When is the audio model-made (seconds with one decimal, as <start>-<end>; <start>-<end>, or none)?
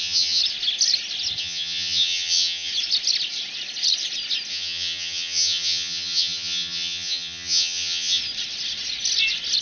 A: 0.0-0.4; 1.4-2.7; 4.5-8.2